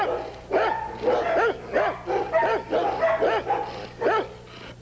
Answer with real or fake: real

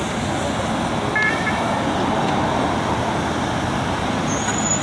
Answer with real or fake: real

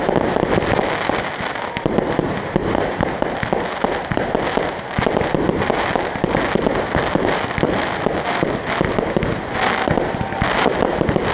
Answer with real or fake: real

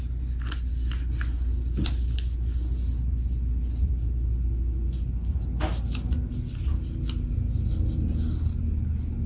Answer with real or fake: real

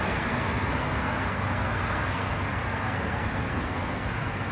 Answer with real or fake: fake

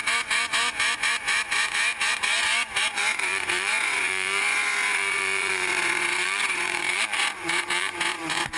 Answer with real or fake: fake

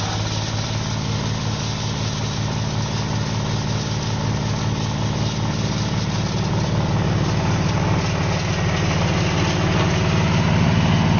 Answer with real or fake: real